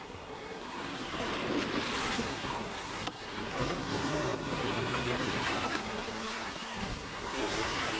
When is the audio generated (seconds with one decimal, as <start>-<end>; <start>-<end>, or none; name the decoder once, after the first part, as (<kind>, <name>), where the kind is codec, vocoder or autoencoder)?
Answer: 0.0-1.3 (codec, SNAC); 2.0-8.0